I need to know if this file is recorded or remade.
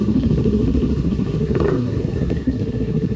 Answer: remade